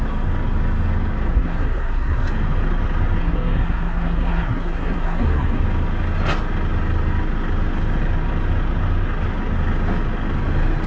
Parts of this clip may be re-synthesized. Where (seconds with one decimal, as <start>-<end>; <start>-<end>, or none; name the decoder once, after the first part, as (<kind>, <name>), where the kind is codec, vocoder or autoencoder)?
1.3-2.3 (codec, SNAC); 3.2-5.6